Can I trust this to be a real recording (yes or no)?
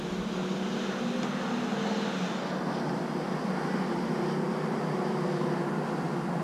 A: yes